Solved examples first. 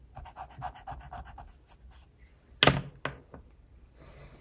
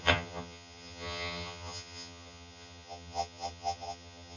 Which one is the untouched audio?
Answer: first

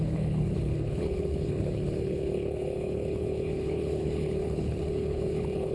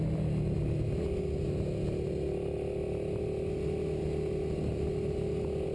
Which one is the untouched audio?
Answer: second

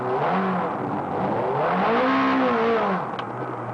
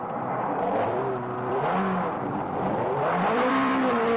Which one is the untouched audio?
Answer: first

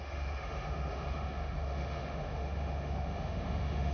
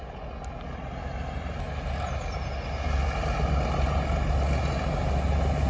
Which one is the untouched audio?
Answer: second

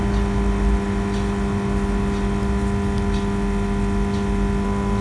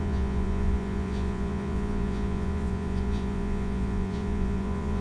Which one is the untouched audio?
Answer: first